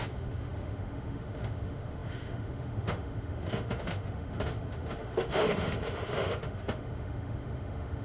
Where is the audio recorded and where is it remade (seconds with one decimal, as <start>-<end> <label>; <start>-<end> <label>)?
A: 0.0-8.0 remade